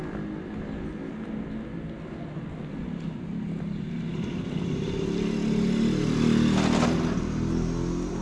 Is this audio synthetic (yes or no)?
no